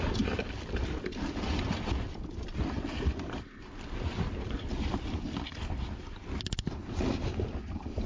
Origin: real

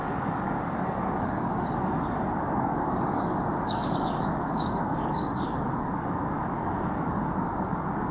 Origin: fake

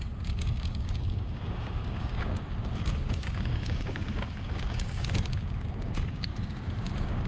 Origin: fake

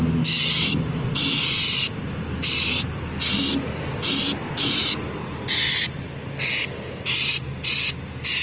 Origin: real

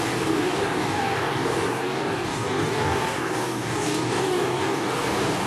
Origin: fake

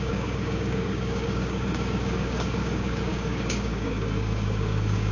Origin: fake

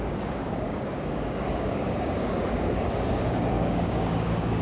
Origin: fake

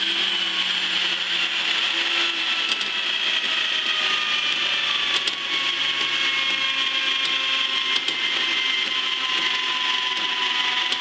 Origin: real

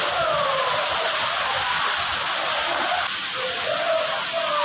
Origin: real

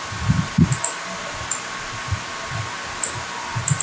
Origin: real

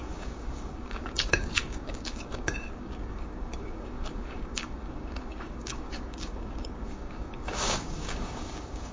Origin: fake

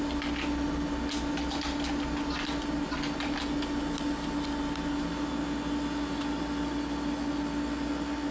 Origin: real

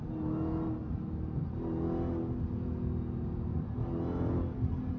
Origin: real